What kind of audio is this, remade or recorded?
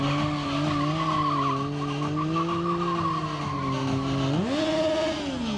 recorded